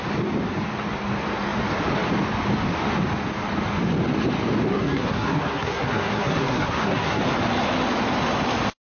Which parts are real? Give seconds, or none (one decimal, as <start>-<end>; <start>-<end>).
0.0-4.7; 7.2-8.9